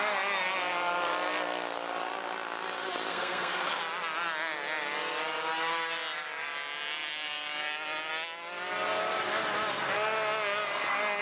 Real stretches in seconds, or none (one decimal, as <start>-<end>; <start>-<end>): 0.0-3.1; 3.8-11.2